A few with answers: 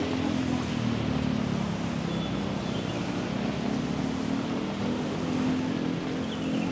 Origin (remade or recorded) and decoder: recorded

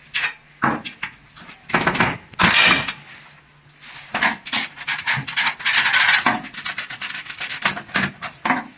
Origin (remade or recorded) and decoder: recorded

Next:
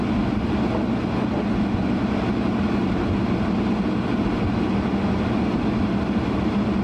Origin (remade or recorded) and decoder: recorded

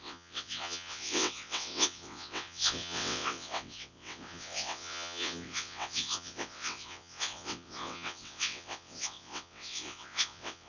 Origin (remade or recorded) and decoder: remade, vocoder, WaveNeXt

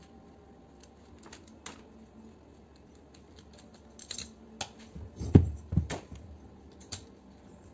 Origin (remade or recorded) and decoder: recorded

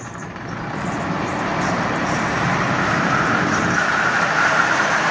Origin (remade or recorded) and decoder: remade, vocoder, BigVGAN v2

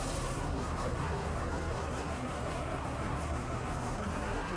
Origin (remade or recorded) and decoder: remade, codec, SNAC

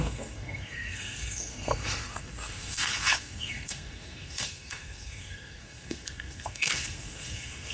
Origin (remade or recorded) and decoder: remade, codec, SNAC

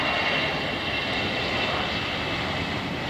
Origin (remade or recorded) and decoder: recorded